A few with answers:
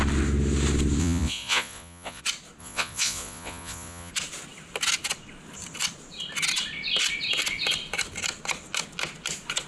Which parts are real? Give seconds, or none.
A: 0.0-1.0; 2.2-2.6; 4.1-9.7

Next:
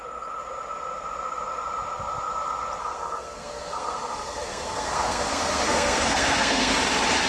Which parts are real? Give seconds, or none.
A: 0.0-2.8; 6.7-7.3

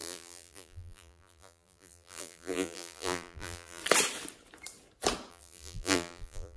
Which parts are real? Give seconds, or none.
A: 3.8-5.3

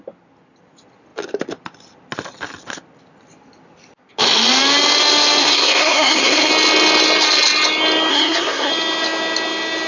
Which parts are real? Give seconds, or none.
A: 0.0-5.4; 6.5-8.1; 8.7-9.9

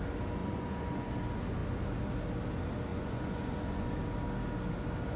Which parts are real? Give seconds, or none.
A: 0.0-0.4; 1.1-2.9; 3.9-5.2

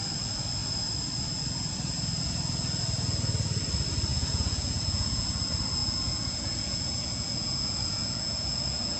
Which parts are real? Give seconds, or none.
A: 0.0-4.1; 5.3-5.8